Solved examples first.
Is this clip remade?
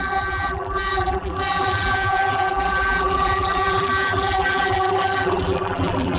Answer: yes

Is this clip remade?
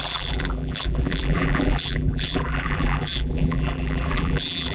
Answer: yes